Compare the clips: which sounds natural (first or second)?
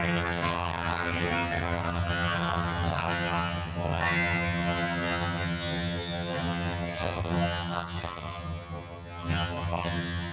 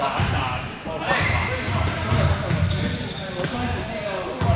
second